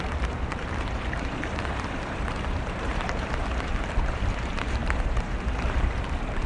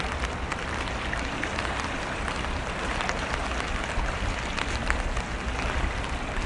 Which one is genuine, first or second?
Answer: second